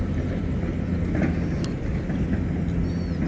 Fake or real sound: real